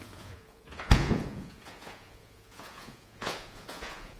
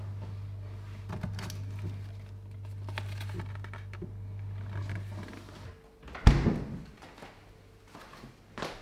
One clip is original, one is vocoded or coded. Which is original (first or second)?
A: second